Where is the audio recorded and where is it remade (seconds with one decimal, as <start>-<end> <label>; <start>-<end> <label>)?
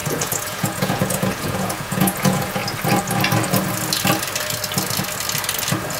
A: 0.0-2.6 remade; 2.6-6.0 recorded